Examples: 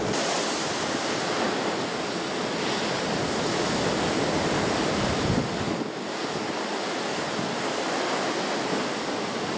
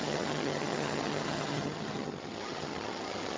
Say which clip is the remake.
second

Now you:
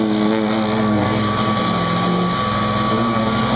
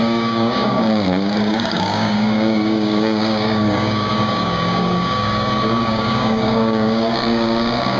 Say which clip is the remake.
second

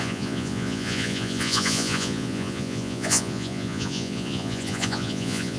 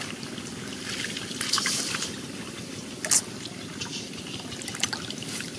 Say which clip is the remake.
first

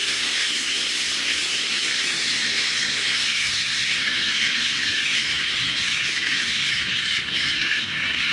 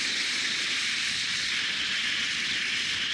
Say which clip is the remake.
first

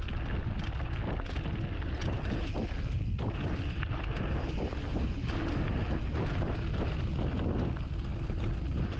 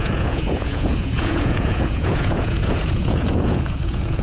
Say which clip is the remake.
second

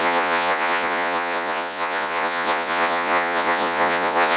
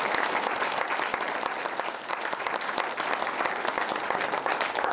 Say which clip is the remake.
first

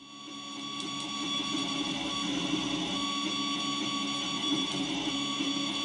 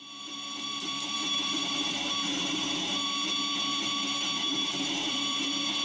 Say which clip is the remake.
second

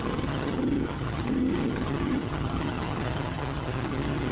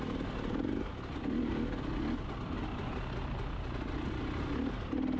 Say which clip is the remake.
first